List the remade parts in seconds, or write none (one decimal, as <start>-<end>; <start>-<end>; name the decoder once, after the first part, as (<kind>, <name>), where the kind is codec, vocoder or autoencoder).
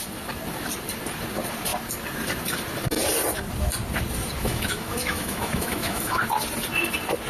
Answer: 4.4-6.2 (autoencoder, DAC-VAE)